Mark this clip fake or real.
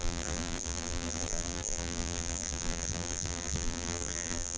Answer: fake